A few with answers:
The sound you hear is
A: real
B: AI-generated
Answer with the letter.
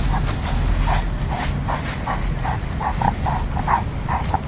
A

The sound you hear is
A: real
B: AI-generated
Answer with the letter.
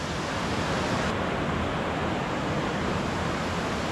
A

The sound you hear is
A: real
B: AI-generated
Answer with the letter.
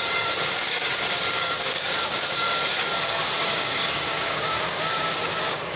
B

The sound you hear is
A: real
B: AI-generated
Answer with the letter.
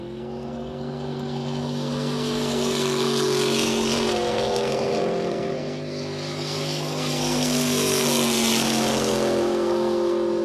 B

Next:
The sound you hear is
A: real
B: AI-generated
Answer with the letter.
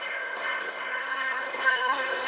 B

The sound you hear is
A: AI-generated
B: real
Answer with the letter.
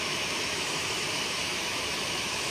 A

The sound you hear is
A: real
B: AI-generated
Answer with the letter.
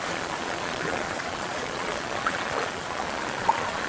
B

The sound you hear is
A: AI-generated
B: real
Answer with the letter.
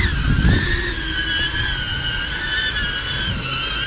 B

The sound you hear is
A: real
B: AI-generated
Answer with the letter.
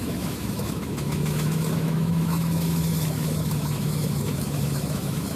B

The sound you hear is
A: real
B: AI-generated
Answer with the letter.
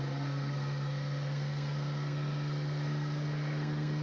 B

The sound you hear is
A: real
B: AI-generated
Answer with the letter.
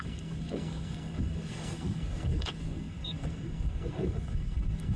B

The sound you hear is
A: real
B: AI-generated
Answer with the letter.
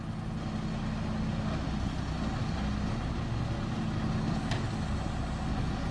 A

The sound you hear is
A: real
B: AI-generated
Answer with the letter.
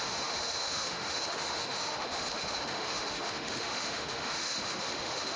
B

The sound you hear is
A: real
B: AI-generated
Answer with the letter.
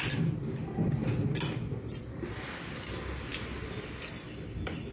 A